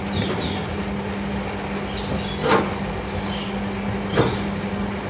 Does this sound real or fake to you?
real